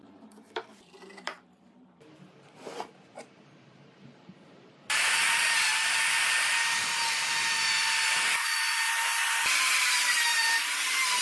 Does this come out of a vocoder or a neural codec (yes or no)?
yes